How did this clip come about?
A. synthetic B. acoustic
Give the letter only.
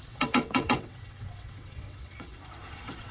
A